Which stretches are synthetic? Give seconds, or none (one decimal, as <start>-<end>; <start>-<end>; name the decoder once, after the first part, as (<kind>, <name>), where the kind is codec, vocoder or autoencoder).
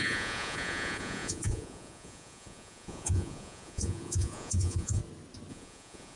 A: 0.0-5.0 (vocoder, Vocos); 5.5-6.2